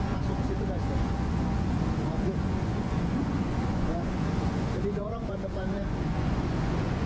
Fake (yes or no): yes